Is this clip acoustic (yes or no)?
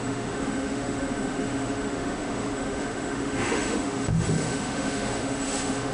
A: no